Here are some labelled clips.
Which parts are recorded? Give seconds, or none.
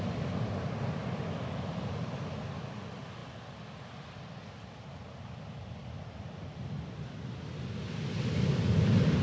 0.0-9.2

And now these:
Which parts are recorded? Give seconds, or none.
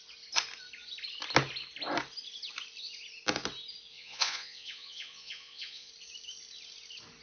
0.0-3.9; 5.9-7.2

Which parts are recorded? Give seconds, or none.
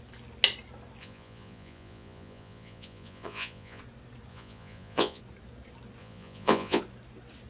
0.0-1.0; 3.8-4.3; 5.2-6.0; 6.8-7.5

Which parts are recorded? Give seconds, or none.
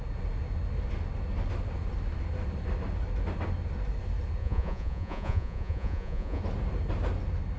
0.0-4.4; 6.4-7.6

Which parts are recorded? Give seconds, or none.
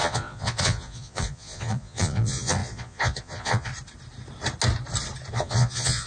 3.7-5.3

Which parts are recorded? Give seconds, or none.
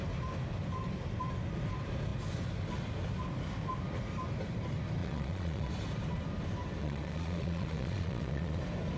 0.0-5.0; 5.7-6.8; 8.6-9.0